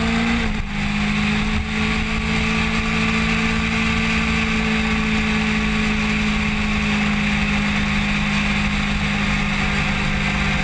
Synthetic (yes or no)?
no